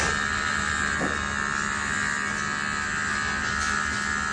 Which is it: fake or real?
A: real